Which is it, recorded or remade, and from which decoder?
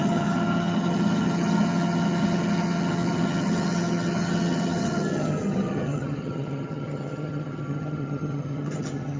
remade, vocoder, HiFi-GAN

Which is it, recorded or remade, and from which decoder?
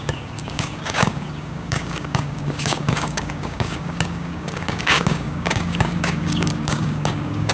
remade, codec, DAC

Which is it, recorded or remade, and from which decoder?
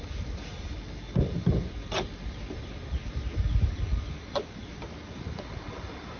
recorded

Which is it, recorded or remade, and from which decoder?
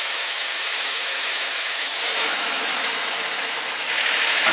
remade, autoencoder, DAC-VAE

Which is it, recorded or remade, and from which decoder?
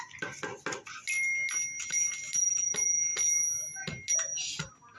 recorded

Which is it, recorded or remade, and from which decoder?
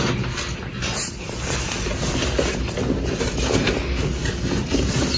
recorded